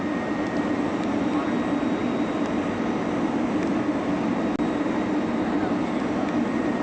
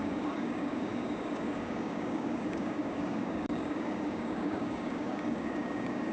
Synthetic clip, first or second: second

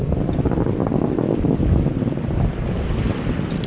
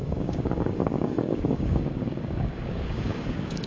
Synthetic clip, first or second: second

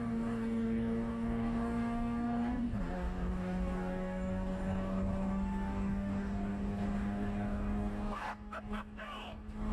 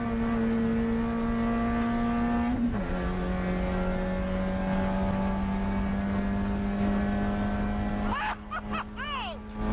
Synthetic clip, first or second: first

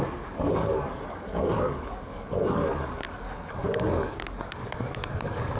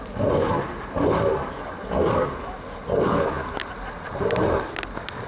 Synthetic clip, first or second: first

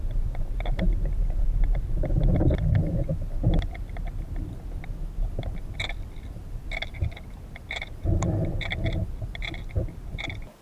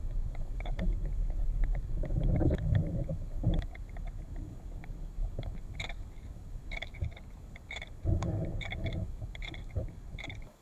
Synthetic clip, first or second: second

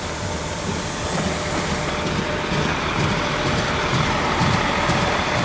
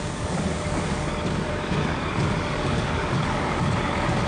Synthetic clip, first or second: second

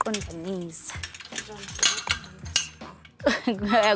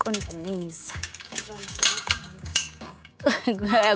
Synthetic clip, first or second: second